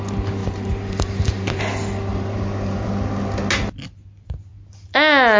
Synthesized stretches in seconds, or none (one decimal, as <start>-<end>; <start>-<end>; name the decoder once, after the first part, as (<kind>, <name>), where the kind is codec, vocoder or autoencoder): 0.4-1.6 (vocoder, BigVGAN v2); 2.1-2.9